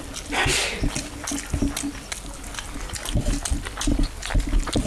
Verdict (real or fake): real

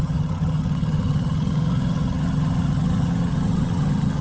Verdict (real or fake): fake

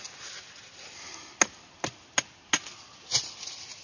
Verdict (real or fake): real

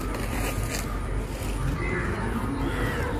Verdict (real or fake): real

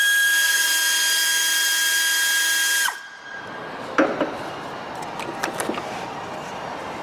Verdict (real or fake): real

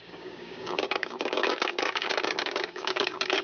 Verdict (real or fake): fake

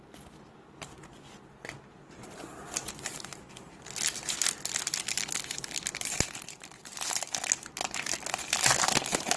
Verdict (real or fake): real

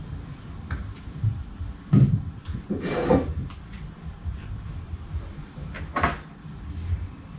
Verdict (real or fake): real